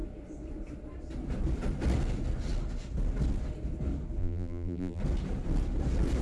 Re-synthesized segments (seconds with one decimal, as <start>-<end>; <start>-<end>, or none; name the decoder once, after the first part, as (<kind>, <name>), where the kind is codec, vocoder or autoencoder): 4.2-5.0 (vocoder, BigVGAN v2)